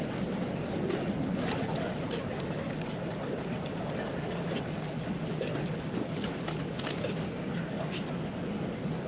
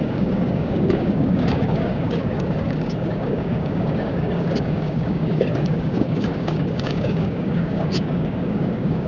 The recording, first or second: first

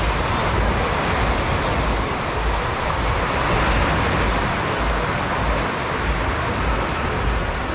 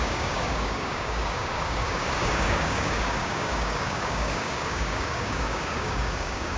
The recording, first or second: first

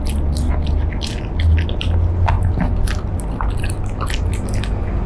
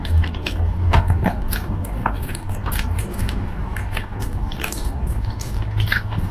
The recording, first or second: first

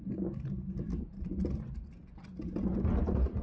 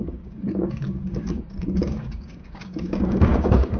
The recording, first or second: first